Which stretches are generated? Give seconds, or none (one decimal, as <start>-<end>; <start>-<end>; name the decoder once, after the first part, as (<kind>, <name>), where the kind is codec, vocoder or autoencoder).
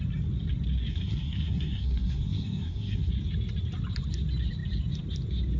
0.9-3.1 (codec, SNAC)